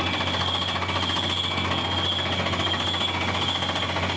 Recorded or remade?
recorded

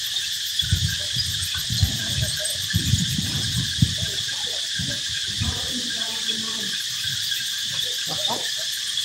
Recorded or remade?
remade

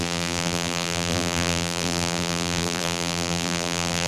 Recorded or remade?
remade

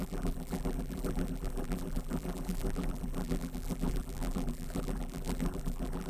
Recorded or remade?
remade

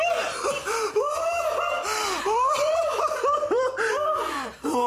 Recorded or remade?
remade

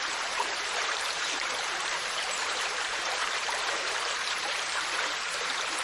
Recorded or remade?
remade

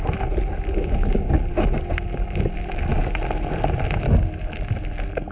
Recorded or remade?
recorded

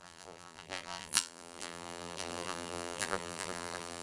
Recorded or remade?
remade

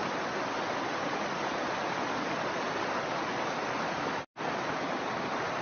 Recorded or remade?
recorded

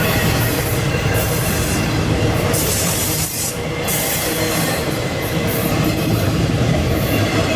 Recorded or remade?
remade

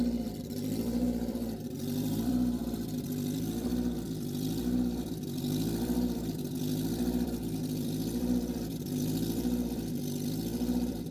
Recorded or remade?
remade